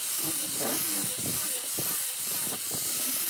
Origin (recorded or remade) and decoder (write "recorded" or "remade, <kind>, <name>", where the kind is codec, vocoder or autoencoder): recorded